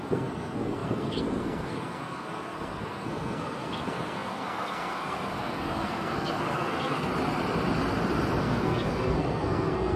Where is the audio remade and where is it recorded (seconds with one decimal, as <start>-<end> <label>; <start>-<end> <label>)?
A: 0.0-7.1 remade; 7.1-8.4 recorded; 8.4-10.0 remade